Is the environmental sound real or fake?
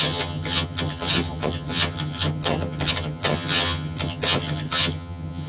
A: fake